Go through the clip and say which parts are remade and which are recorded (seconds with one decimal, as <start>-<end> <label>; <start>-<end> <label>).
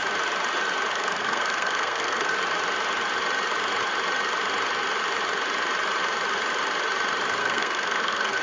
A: 0.0-0.9 recorded; 0.9-2.3 remade; 2.3-7.4 recorded; 7.4-8.4 remade